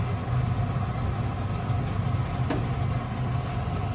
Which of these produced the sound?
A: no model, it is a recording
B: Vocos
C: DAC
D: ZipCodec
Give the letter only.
A